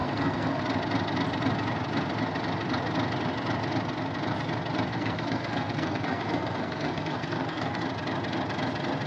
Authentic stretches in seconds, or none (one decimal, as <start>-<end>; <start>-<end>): 0.6-4.9; 7.8-9.1